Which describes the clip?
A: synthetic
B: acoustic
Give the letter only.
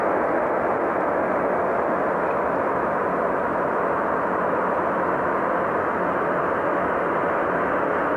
B